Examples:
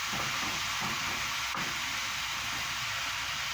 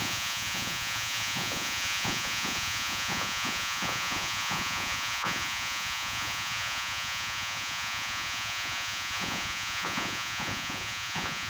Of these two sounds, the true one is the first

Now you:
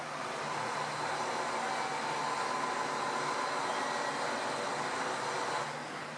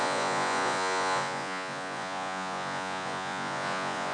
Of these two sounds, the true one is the first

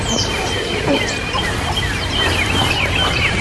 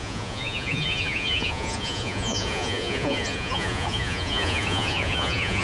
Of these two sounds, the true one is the first